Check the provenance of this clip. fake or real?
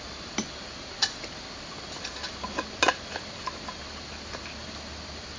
real